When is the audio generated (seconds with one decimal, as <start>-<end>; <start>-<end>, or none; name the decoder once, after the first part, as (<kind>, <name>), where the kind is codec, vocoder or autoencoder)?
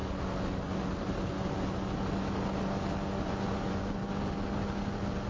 3.2-4.0 (vocoder, Vocos)